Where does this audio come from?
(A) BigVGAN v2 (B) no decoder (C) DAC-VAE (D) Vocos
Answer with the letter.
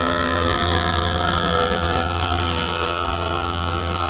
A